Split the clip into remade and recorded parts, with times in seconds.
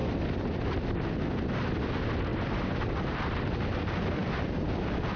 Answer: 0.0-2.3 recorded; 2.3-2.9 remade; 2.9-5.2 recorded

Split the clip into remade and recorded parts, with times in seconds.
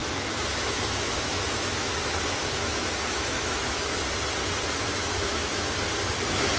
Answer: 0.0-4.0 remade; 4.0-4.9 recorded; 4.9-5.7 remade; 5.7-6.6 recorded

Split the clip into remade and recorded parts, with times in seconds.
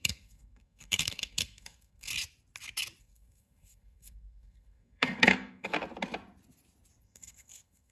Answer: 0.0-2.1 remade; 2.1-3.0 recorded; 3.0-5.7 remade; 5.7-7.0 recorded; 7.0-7.9 remade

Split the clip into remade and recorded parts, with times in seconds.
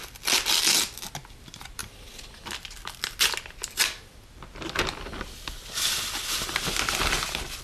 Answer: 0.0-7.6 recorded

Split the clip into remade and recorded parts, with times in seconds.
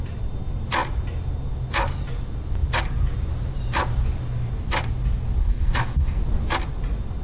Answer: 0.0-5.4 recorded; 5.4-6.2 remade; 6.2-7.2 recorded